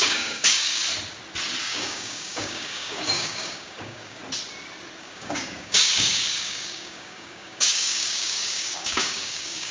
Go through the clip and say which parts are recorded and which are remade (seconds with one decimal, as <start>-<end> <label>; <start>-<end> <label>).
0.0-0.8 remade; 0.8-1.6 recorded; 1.6-4.2 remade; 4.2-5.0 recorded; 5.0-9.7 remade